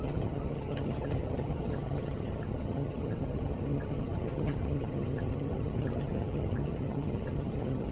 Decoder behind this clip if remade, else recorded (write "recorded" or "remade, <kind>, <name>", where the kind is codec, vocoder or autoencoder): remade, vocoder, HiFi-GAN